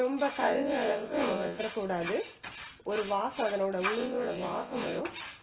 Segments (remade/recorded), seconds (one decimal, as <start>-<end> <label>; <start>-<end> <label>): 0.0-0.4 recorded; 0.4-1.6 remade; 1.6-4.0 recorded; 4.0-5.0 remade; 5.0-5.4 recorded